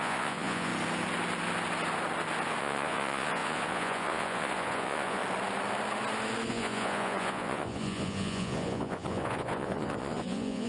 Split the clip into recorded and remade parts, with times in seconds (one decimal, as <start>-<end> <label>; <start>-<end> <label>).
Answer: 0.0-0.7 remade; 0.7-2.6 recorded; 2.6-5.2 remade; 5.2-6.5 recorded; 6.5-10.7 remade